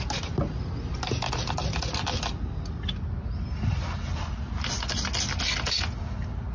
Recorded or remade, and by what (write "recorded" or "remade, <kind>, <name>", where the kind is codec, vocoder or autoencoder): recorded